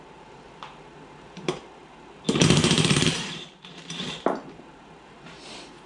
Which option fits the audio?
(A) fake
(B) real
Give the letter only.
A